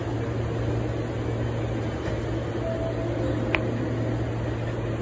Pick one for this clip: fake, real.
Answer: real